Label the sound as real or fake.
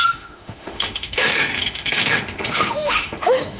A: fake